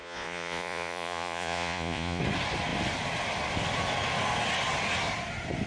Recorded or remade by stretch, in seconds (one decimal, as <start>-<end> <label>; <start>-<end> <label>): 0.0-2.2 remade; 2.2-5.7 recorded